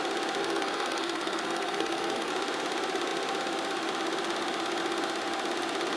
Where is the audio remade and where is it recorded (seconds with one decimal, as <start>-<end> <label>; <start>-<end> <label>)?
0.0-0.4 recorded; 0.4-2.3 remade; 2.3-6.0 recorded